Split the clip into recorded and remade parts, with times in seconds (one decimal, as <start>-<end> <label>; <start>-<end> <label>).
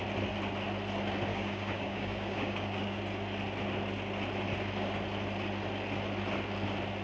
0.0-1.3 recorded; 1.3-3.0 remade; 3.0-7.0 recorded